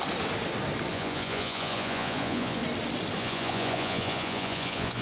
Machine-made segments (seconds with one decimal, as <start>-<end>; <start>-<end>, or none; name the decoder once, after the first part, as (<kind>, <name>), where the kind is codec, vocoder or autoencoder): 0.9-2.6 (vocoder, Vocos); 3.2-5.0